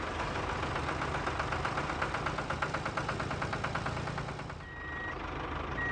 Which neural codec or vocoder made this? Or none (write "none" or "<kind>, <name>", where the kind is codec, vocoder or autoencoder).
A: none